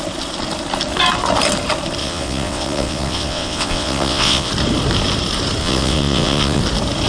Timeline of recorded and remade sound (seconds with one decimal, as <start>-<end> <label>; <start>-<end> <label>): 0.0-2.0 recorded; 2.0-4.5 remade; 4.5-5.6 recorded; 5.6-6.6 remade; 6.6-7.1 recorded